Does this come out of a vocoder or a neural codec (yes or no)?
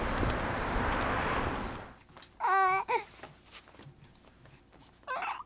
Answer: no